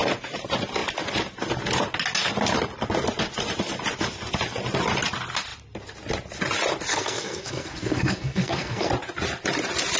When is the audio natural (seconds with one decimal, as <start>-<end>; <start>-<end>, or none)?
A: 0.0-6.9; 8.9-10.0